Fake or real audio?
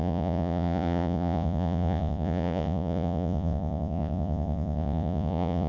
fake